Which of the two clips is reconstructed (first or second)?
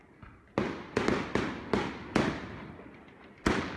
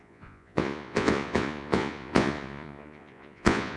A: second